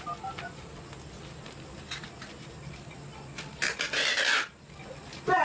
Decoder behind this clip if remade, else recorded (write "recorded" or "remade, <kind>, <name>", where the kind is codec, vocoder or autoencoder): recorded